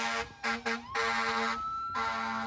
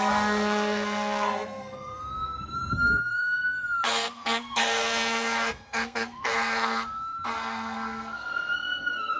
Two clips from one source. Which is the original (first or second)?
first